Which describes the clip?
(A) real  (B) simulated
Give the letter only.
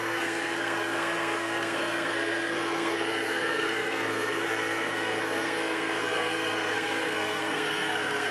B